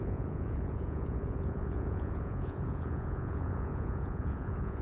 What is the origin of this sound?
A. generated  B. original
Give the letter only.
A